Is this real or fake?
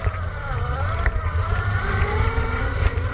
fake